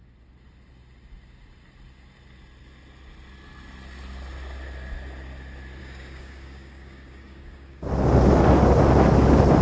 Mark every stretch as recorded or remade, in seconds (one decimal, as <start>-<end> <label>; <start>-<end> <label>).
0.0-5.8 recorded; 5.8-7.9 remade; 7.9-9.6 recorded